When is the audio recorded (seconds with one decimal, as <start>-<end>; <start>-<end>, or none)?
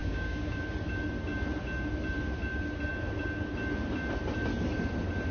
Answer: 0.6-5.3